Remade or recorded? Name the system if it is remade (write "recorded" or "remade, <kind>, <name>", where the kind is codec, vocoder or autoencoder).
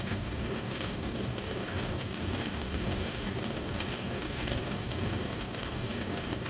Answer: remade, codec, DAC